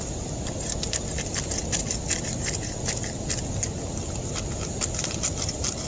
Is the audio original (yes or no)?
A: yes